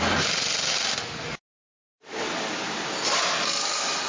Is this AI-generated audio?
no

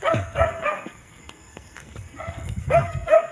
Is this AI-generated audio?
yes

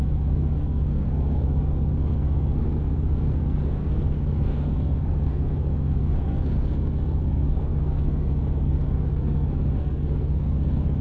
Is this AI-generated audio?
yes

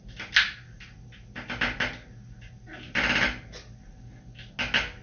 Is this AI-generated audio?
no